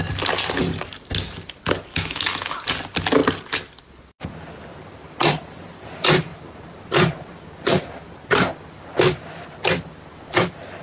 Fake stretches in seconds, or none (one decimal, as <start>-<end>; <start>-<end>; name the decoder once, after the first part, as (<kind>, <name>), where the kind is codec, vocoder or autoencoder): 1.9-2.6 (autoencoder, DAC-VAE)